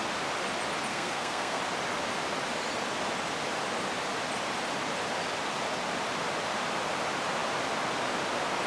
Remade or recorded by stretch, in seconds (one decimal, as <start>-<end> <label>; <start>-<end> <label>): 0.0-0.9 recorded; 0.9-1.6 remade; 1.6-8.7 recorded